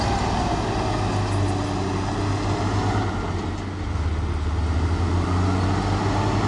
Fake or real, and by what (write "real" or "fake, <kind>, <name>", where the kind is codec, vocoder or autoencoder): real